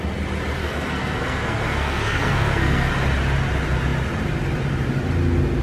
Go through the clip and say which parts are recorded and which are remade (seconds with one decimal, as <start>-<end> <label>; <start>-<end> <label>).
0.0-0.6 recorded; 0.6-2.9 remade; 2.9-5.6 recorded